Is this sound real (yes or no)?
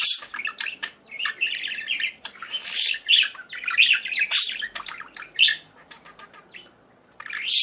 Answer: yes